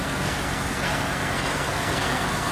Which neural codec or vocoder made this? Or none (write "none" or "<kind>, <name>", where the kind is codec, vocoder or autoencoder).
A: codec, SNAC